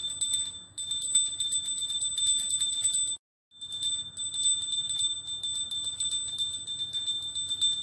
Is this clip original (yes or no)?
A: yes